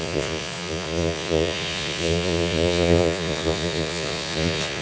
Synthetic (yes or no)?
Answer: yes